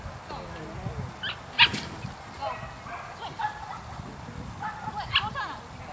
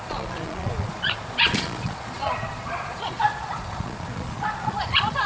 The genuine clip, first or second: first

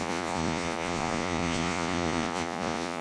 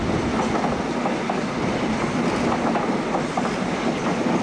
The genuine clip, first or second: second